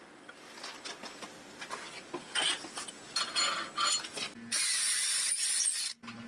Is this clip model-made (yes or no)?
no